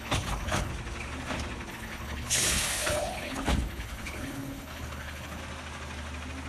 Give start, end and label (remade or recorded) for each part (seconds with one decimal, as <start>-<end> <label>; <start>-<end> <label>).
0.0-0.7 remade; 0.7-1.7 recorded; 1.7-5.4 remade; 5.4-6.5 recorded